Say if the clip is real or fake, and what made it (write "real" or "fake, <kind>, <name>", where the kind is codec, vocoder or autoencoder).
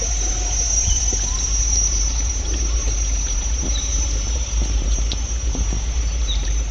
fake, vocoder, BigVGAN v2